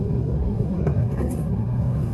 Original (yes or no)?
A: no